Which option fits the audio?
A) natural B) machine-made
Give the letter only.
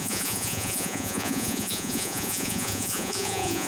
B